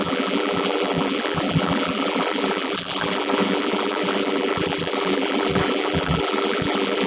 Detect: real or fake fake